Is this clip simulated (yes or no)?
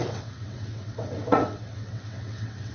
yes